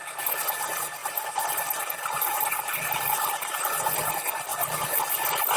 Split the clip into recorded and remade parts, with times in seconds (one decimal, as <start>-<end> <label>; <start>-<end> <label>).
0.0-1.0 recorded; 1.0-4.1 remade; 4.1-4.5 recorded; 4.5-5.0 remade; 5.0-5.6 recorded